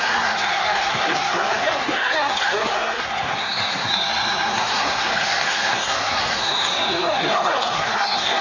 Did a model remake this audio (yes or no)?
yes